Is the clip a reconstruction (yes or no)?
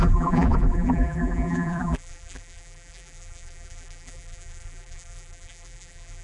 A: yes